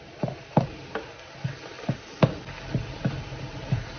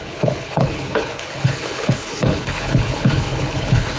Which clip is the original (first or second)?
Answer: first